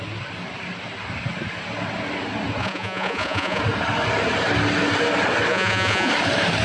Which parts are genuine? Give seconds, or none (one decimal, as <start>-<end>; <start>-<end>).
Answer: 0.0-2.6; 3.6-5.5; 6.1-6.6